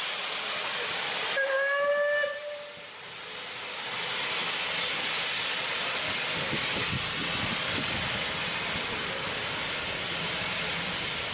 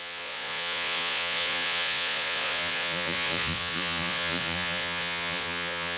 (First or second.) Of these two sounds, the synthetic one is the second